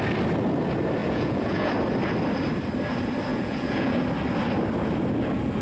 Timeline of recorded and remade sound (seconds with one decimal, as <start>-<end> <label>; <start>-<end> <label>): 0.0-1.0 recorded; 1.0-1.7 remade; 1.7-3.3 recorded; 3.3-4.0 remade; 4.0-5.6 recorded